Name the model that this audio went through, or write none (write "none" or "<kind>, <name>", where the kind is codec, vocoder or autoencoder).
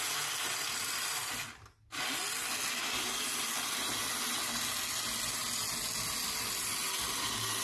none